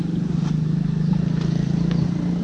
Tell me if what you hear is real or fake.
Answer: real